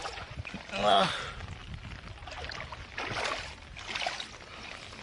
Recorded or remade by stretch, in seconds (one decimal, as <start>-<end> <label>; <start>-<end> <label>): 0.0-0.5 remade; 0.5-5.0 recorded